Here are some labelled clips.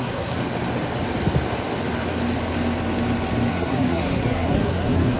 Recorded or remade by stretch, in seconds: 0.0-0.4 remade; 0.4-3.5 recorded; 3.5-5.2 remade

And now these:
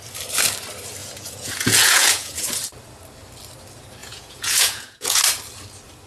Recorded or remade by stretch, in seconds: 0.0-1.0 recorded; 1.0-2.5 remade; 2.5-4.0 recorded; 4.0-5.2 remade; 5.2-6.1 recorded

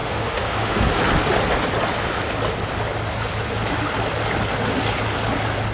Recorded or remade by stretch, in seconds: 0.0-0.8 remade; 0.8-5.7 recorded

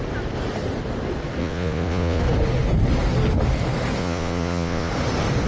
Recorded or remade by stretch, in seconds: 0.0-1.4 recorded; 1.4-2.2 remade; 2.2-4.0 recorded; 4.0-4.9 remade; 4.9-5.5 recorded

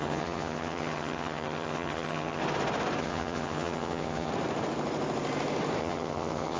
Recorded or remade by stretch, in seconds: 0.0-2.4 remade; 2.4-3.0 recorded; 3.0-4.3 remade; 4.3-5.8 recorded; 5.8-6.6 remade

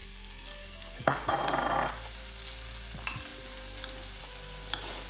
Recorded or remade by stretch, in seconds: 0.0-1.3 remade; 1.3-5.1 recorded